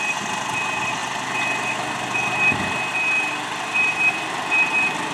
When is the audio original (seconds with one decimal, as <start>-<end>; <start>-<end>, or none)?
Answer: 0.0-5.1